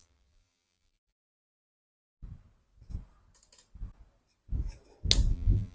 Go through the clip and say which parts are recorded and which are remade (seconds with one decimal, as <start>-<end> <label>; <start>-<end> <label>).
0.0-1.9 remade; 1.9-5.3 recorded; 5.3-5.7 remade